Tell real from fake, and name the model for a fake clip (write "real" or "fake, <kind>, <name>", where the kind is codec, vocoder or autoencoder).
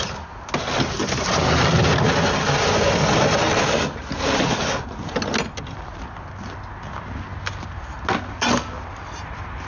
real